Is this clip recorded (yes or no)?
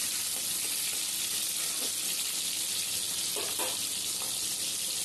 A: yes